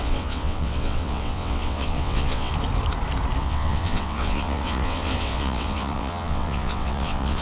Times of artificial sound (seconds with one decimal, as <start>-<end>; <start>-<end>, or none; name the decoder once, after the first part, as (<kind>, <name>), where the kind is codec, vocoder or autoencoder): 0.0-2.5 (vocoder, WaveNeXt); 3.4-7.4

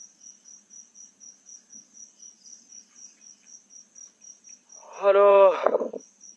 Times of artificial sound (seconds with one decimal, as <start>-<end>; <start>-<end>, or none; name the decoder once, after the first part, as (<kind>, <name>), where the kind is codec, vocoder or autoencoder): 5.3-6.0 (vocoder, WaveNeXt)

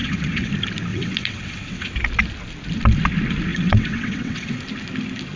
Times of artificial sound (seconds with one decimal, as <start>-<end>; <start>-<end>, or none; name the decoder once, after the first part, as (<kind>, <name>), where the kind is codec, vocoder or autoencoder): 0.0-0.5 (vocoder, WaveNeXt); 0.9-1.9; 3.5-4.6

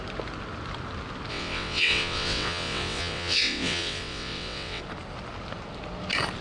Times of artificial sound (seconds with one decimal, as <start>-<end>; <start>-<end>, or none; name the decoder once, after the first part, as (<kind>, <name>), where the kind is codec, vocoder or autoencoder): 1.3-4.8 (vocoder, WaveNeXt)

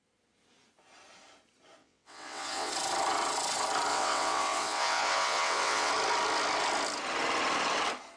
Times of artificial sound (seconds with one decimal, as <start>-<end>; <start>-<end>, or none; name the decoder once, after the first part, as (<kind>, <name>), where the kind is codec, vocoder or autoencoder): 1.8-2.7 (vocoder, WaveNeXt); 3.9-5.9